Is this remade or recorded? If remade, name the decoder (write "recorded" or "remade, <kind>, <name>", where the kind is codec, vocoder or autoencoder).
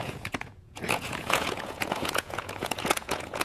remade, vocoder, Vocos